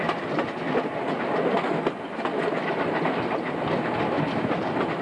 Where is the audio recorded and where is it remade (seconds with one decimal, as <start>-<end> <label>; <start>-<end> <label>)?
0.0-5.0 recorded